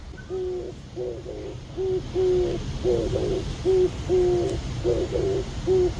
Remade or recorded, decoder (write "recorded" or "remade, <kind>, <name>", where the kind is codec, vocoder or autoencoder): recorded